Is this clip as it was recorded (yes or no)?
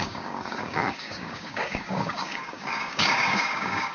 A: no